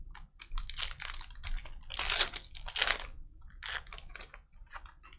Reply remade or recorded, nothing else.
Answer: recorded